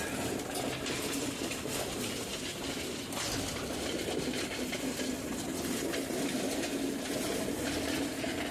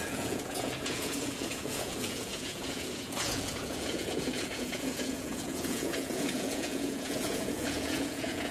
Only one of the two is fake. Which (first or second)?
second